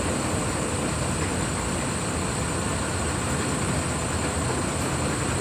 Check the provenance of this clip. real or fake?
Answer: real